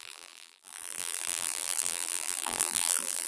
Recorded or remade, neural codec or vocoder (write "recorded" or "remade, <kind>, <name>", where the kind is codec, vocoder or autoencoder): remade, vocoder, BigVGAN v2